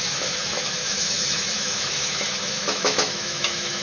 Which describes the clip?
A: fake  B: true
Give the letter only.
A